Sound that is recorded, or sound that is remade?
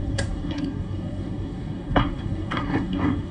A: remade